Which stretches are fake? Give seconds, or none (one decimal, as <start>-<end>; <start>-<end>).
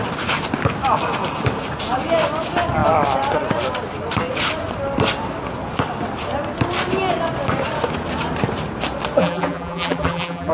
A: 9.2-10.5